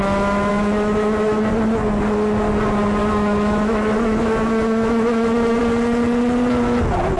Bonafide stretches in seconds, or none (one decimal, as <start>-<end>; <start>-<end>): 0.0-0.5; 1.5-3.0; 5.6-7.2